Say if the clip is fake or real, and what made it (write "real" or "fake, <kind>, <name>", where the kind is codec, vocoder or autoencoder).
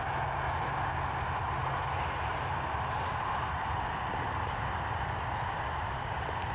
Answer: real